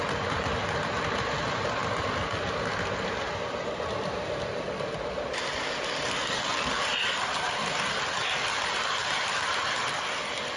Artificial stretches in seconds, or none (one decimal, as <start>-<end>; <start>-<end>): none